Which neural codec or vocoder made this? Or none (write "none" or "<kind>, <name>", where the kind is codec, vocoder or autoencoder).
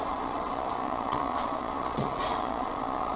vocoder, Vocos